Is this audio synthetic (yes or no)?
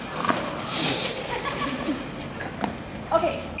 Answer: no